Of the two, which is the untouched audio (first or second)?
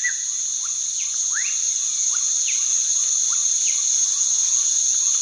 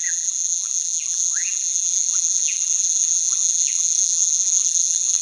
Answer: first